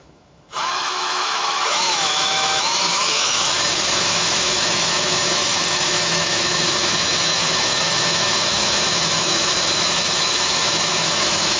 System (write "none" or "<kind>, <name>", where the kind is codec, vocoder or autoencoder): autoencoder, DAC-VAE